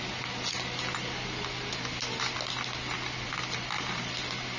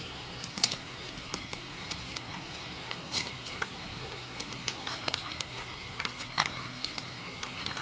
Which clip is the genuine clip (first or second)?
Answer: first